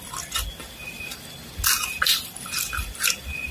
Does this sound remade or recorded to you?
recorded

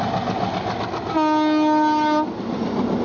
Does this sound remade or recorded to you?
recorded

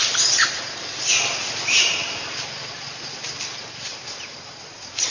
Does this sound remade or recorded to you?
recorded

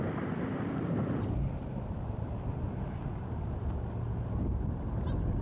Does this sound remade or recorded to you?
recorded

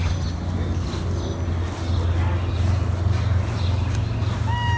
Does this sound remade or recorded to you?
recorded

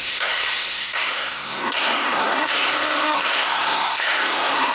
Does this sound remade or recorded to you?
remade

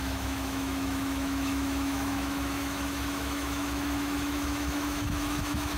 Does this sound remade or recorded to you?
remade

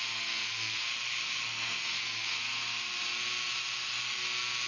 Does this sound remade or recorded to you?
recorded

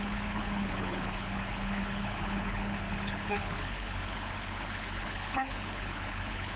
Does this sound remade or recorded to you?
remade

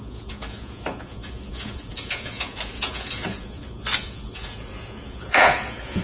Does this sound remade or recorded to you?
remade